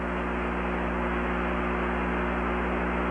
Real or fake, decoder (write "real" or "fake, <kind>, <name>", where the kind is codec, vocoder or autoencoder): real